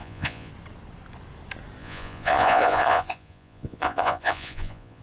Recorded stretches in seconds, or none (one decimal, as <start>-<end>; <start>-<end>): 0.5-1.8